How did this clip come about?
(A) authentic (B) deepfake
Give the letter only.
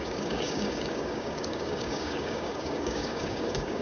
B